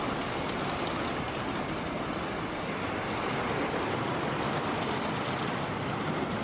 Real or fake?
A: real